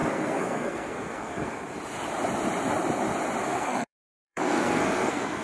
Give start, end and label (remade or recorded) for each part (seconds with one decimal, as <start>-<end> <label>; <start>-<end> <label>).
0.0-1.5 remade; 1.5-3.4 recorded; 3.4-5.4 remade